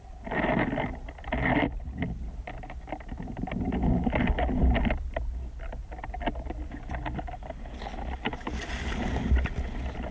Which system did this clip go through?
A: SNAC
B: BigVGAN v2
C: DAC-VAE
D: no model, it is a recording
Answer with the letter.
D